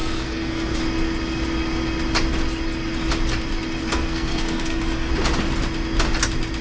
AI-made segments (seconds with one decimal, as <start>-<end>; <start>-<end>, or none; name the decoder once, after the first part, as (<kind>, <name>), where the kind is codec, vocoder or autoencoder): 0.0-0.8 (codec, SNAC); 3.8-5.1

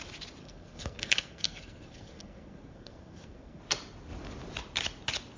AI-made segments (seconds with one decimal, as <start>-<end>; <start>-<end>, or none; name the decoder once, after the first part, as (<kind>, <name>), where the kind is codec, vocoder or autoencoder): 0.4-3.6 (codec, SNAC)

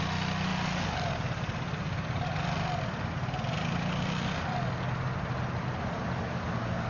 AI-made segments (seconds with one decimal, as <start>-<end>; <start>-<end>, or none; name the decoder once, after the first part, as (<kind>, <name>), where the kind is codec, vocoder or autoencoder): none

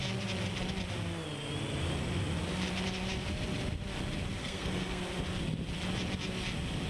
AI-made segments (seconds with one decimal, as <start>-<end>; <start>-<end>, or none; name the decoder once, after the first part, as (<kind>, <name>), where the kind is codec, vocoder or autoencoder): 4.4-5.0 (codec, SNAC)

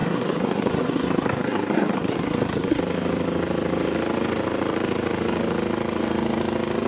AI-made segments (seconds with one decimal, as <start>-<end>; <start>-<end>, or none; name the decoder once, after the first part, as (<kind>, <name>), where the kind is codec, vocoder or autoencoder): 0.0-2.8 (codec, SNAC)

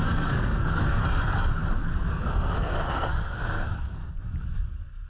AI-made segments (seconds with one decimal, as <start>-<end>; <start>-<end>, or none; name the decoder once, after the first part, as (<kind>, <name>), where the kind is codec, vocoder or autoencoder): 0.0-1.0 (codec, SNAC); 2.1-4.0